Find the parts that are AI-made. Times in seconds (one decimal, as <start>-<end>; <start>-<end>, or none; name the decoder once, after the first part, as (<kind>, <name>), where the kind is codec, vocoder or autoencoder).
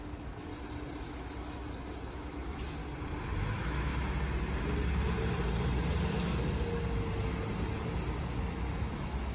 0.0-0.5 (autoencoder, DAC-VAE); 1.0-1.6; 2.1-2.8; 3.5-3.9; 8.5-9.3